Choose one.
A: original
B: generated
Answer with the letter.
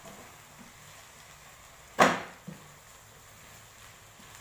A